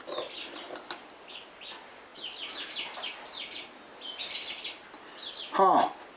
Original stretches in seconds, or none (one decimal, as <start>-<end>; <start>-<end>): 0.0-6.2